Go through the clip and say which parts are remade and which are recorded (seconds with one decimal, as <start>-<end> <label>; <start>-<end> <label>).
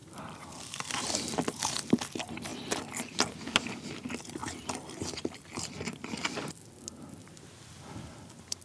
0.0-1.9 remade; 1.9-4.4 recorded; 4.4-5.4 remade; 5.4-7.2 recorded; 7.2-8.6 remade